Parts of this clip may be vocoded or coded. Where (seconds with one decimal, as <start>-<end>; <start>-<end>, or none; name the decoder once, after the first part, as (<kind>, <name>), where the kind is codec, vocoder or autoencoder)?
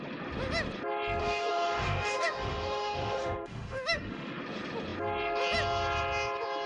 1.2-4.4 (autoencoder, DAC-VAE)